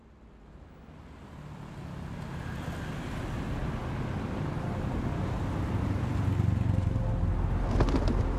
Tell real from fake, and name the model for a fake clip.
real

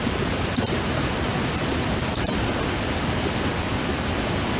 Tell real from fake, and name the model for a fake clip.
real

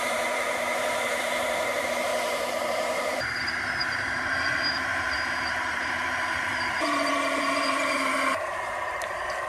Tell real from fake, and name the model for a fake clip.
fake, vocoder, BigVGAN v2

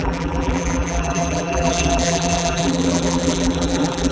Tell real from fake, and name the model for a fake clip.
fake, vocoder, BigVGAN v2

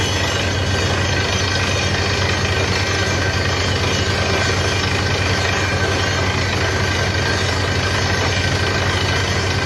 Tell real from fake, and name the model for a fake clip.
real